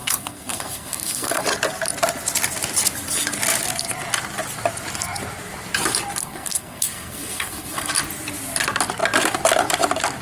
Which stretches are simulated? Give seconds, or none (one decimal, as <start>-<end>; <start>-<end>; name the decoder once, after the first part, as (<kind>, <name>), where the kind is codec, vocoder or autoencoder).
0.0-1.4 (codec, SNAC); 6.2-7.9